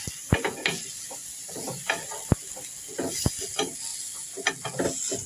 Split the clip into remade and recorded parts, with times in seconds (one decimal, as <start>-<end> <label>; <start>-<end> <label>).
0.0-5.3 recorded